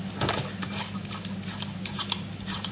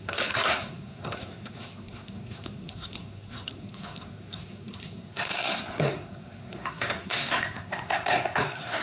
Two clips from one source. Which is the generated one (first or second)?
second